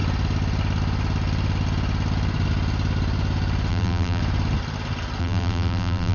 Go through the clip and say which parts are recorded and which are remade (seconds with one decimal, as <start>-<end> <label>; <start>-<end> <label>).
0.0-3.7 recorded; 3.7-4.2 remade; 4.2-5.2 recorded; 5.2-6.1 remade